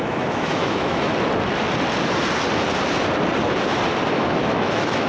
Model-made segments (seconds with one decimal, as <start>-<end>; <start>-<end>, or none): 0.0-1.1; 4.1-5.1